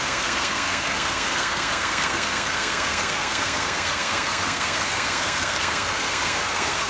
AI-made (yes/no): yes